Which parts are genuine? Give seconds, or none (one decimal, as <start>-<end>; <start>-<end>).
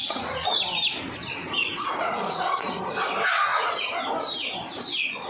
0.6-1.4; 2.8-3.5; 4.0-5.3